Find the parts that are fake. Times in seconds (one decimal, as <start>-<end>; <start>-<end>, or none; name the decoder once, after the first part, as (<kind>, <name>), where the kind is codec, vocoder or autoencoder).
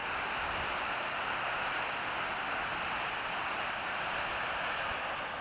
none